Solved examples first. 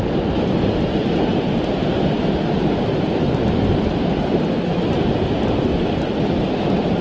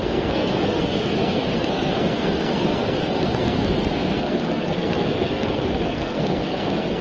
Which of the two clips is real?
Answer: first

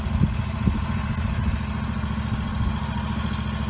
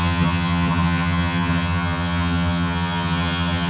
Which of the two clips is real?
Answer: first